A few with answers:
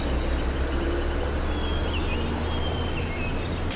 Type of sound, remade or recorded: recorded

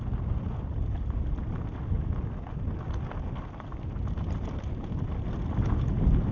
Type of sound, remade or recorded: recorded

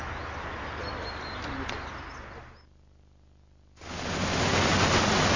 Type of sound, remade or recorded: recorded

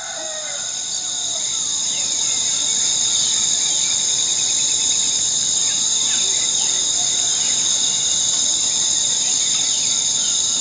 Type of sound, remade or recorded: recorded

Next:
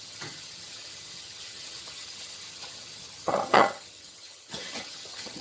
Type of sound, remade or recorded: remade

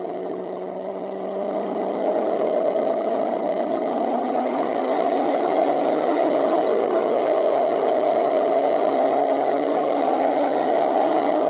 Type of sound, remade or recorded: remade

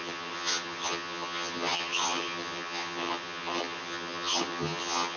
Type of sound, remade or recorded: remade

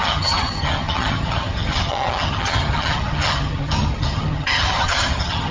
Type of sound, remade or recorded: remade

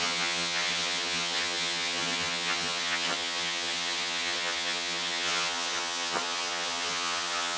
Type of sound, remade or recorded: remade